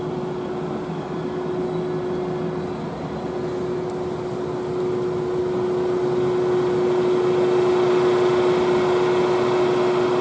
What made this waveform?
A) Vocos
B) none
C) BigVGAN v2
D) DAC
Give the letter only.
B